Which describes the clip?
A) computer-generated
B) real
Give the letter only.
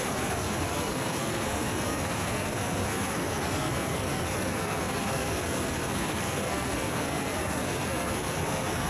A